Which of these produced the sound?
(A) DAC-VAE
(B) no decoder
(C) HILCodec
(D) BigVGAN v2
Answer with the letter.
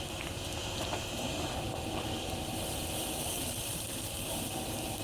D